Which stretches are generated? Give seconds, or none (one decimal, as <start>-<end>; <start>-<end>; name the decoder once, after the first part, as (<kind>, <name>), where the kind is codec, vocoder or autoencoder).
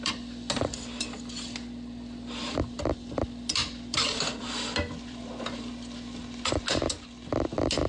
3.6-5.7 (vocoder, BigVGAN v2)